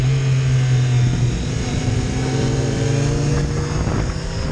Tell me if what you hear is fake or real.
real